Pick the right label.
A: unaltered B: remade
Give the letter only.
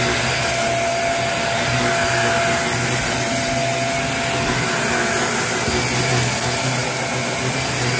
A